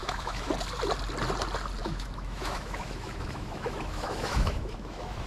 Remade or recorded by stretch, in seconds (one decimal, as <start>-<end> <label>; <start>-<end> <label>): 0.0-0.5 remade; 0.5-1.8 recorded; 1.8-5.3 remade

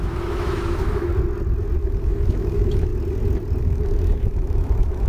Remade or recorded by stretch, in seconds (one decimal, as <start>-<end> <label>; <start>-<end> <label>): 0.0-1.1 remade; 1.1-1.8 recorded; 1.8-2.9 remade; 2.9-3.6 recorded; 3.6-5.1 remade

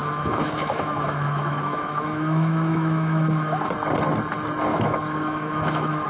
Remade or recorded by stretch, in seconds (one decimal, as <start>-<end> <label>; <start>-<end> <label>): 0.0-3.7 remade; 3.7-4.7 recorded; 4.7-6.1 remade

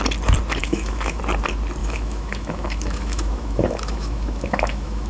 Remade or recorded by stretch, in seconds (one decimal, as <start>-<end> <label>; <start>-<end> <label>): 0.0-0.6 recorded; 0.6-1.2 remade; 1.2-1.8 recorded; 1.8-5.1 remade

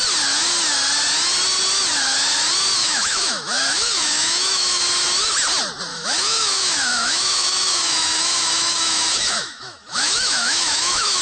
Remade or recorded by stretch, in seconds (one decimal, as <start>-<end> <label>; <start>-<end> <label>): 0.0-2.8 recorded; 2.8-4.8 remade; 4.8-5.9 recorded; 5.9-11.2 remade